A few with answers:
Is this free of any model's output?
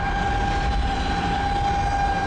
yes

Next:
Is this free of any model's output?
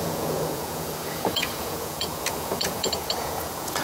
no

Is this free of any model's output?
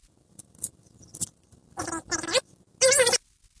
yes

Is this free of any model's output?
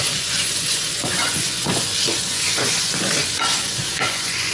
no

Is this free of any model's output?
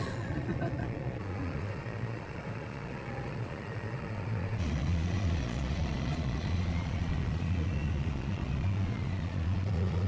no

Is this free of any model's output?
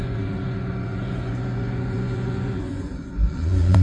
no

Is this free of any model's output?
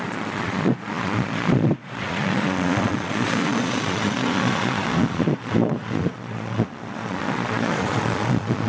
no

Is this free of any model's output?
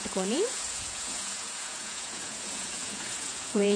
no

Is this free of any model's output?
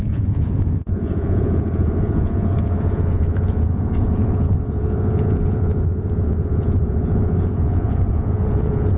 no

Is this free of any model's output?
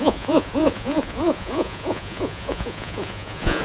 no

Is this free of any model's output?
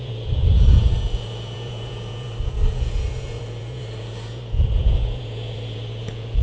no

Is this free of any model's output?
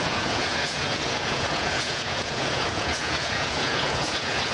no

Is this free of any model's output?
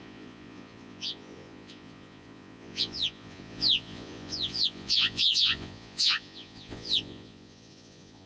no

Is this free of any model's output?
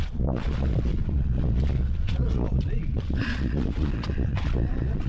no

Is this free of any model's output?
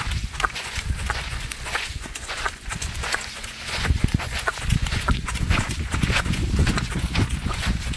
no